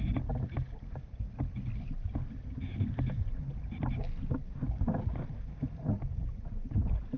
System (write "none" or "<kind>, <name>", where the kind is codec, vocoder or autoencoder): none